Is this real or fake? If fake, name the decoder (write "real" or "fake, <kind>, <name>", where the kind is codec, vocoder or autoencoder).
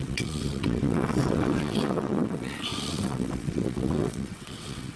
fake, vocoder, WaveNeXt